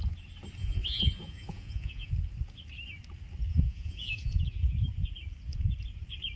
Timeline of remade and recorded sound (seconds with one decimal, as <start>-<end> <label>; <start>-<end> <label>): 0.0-0.6 recorded; 0.6-2.1 remade; 2.1-3.5 recorded; 3.5-4.4 remade; 4.4-6.4 recorded